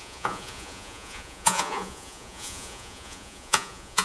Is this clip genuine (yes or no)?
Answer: no